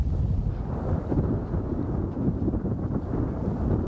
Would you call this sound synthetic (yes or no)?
no